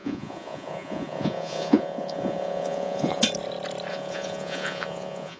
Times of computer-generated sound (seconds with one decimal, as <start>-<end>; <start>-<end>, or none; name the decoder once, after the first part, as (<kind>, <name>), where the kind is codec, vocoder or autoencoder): 0.0-3.2 (vocoder, Vocos); 3.9-5.4

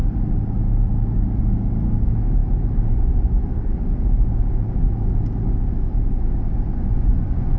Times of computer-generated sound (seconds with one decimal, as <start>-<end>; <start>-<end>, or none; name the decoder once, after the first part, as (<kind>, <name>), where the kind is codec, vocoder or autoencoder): 6.7-7.6 (vocoder, Vocos)

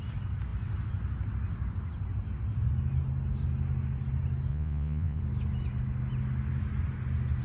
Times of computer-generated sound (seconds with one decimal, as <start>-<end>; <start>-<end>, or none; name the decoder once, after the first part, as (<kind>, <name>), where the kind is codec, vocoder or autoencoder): 4.5-5.2 (vocoder, Vocos)